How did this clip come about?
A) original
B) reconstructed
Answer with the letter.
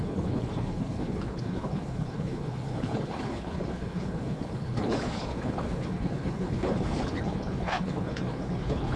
B